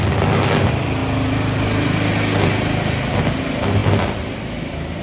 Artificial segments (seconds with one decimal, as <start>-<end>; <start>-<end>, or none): none